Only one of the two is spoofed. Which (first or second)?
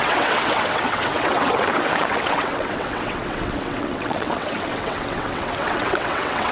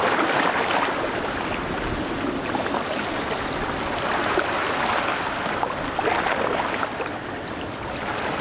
first